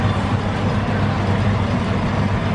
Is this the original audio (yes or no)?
yes